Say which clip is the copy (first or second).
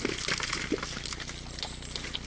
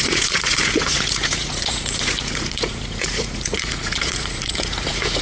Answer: second